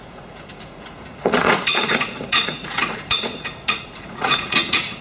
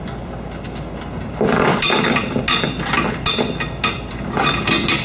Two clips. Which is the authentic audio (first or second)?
second